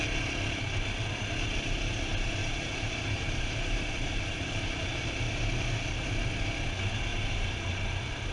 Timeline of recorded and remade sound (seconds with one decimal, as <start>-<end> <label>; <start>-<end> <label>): 0.0-2.4 recorded; 2.4-4.9 remade; 4.9-7.1 recorded; 7.1-7.7 remade; 7.7-8.3 recorded